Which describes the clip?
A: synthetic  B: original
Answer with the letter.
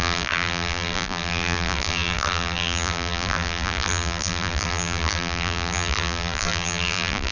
A